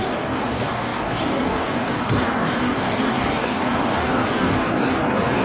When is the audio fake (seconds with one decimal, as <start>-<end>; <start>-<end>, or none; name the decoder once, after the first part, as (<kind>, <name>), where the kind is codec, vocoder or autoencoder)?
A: 0.0-5.4 (codec, DAC)